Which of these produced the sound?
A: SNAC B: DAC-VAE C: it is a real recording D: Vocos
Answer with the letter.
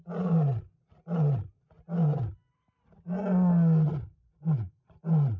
C